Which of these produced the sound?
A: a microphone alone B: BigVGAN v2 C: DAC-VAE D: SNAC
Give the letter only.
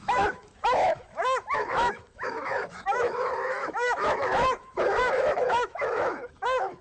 C